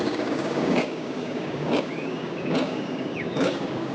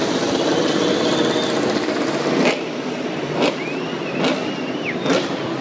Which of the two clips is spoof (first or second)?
first